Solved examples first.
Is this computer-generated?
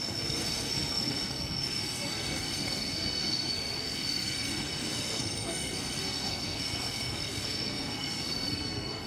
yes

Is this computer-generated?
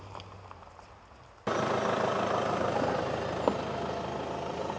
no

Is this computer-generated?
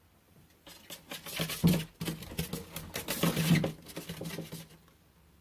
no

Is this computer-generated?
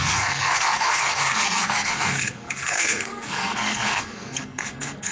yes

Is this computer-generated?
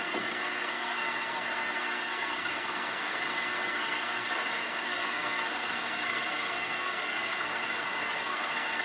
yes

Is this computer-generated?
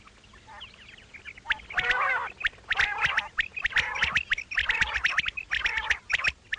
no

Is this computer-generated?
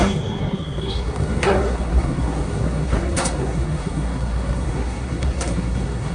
yes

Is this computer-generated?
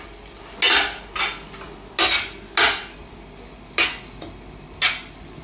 no